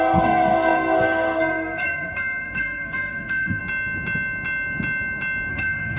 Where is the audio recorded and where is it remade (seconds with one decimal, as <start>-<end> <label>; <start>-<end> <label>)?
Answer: 0.0-3.6 remade; 3.6-5.5 recorded; 5.5-6.0 remade